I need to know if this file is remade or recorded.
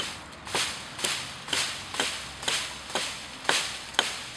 recorded